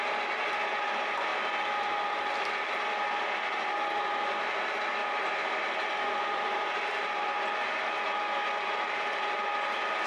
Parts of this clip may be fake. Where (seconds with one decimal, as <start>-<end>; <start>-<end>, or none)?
1.3-3.2; 5.0-7.6